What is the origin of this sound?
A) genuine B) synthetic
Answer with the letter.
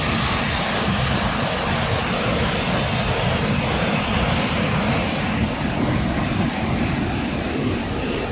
A